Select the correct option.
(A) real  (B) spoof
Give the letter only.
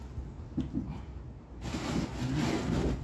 A